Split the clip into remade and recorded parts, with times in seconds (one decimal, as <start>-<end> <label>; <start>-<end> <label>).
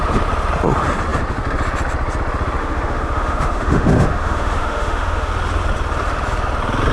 0.0-2.6 recorded; 2.6-5.3 remade; 5.3-6.9 recorded